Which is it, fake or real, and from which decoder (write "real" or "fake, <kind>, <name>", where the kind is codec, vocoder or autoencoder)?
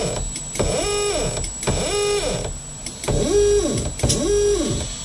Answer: real